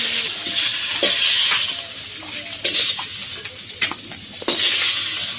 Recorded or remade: recorded